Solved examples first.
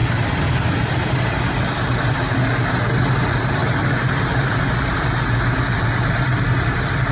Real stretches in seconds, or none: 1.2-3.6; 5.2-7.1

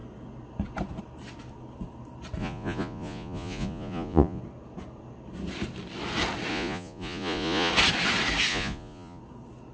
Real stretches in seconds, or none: 0.0-2.4; 4.4-6.5; 7.7-8.5; 9.2-9.7

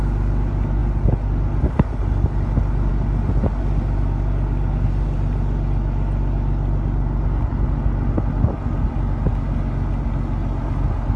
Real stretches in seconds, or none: 0.0-11.2

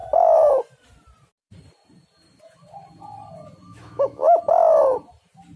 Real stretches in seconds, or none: 0.0-3.7; 4.4-5.6

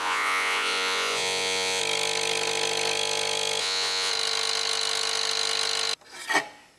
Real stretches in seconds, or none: 1.8-3.6; 4.1-6.8

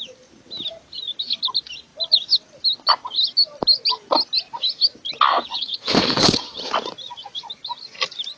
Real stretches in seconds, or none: 0.0-5.3; 6.6-8.4

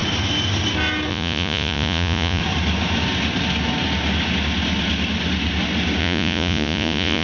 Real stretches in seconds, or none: 0.0-1.1; 2.4-6.0

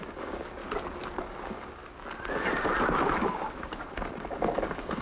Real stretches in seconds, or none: 0.6-1.2; 1.8-3.2